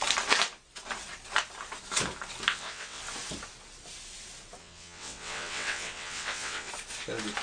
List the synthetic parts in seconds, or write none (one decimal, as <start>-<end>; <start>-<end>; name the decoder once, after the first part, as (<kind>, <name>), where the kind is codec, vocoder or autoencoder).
2.5-3.0 (vocoder, WaveNeXt); 4.6-6.7